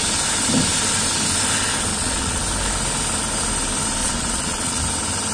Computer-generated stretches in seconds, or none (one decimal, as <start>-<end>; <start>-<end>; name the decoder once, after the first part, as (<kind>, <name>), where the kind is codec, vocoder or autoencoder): 1.9-2.4 (vocoder, Vocos); 4.0-4.8